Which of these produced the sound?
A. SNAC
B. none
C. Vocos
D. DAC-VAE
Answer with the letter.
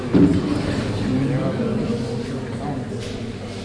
B